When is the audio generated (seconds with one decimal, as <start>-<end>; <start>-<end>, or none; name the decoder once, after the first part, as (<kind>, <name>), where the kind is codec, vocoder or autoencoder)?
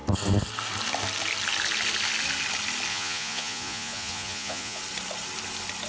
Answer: 2.9-4.8 (vocoder, Vocos)